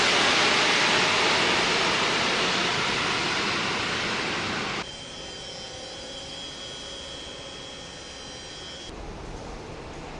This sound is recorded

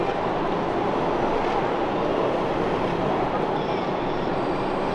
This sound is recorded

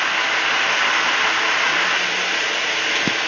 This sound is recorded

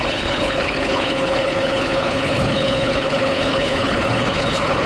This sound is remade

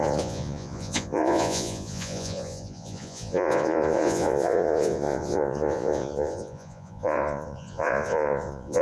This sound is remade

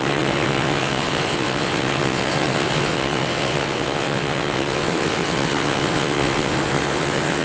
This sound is remade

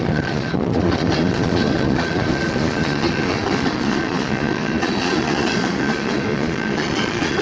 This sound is remade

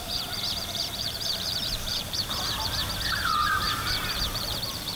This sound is remade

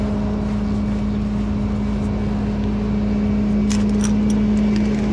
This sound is recorded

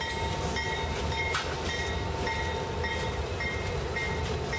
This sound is recorded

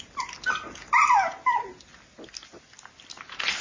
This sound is recorded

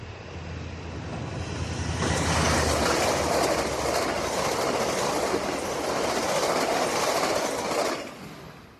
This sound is recorded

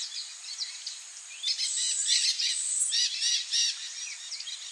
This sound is recorded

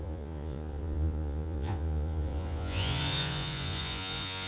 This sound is remade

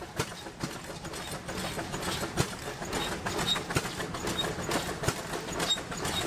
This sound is recorded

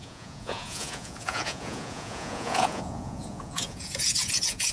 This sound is remade